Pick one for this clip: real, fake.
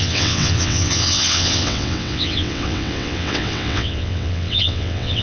fake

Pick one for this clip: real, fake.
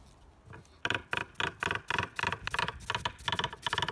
real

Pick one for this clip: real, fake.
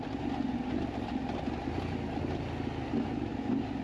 real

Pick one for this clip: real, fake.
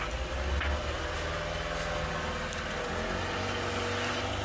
real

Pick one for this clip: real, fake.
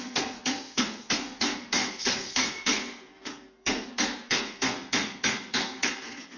fake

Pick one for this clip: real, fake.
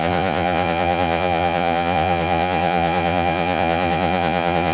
fake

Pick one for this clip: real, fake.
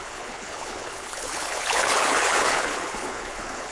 fake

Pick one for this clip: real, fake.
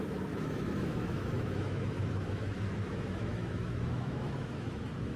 fake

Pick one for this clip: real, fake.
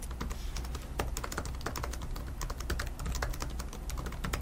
real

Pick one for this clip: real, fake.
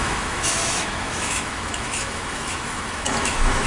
fake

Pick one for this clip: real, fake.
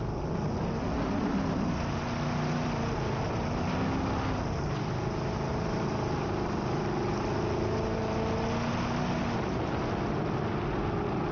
real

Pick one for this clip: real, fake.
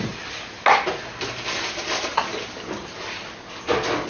real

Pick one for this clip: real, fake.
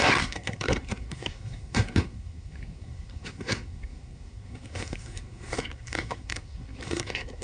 fake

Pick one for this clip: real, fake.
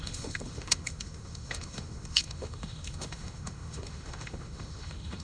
fake